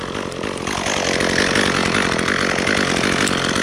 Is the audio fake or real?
real